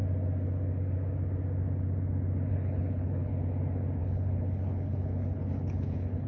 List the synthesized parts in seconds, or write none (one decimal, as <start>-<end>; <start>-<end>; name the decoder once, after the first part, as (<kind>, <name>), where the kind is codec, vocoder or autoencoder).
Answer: 2.5-3.3 (codec, HILCodec); 4.0-6.3